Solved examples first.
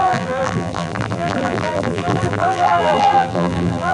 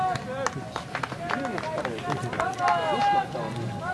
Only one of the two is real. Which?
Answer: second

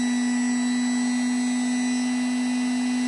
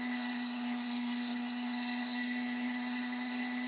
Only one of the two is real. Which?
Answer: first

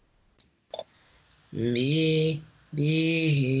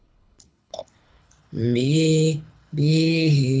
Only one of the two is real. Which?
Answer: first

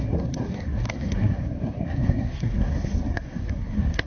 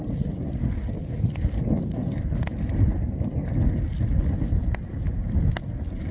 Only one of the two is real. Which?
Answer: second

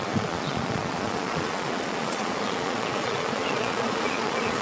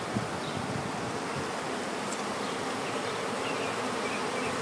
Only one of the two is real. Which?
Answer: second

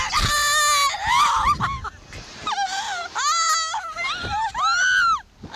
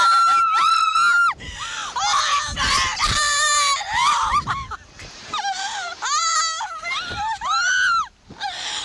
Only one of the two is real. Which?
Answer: first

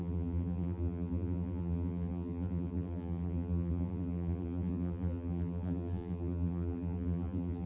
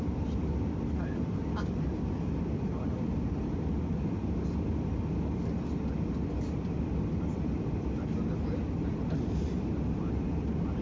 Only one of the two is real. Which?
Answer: second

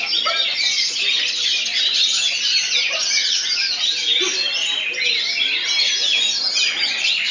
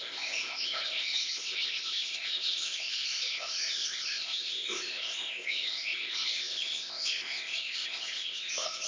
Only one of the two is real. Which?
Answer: first